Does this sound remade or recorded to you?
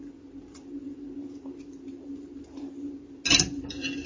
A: recorded